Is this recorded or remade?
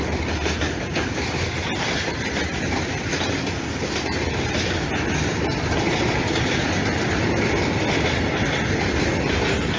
recorded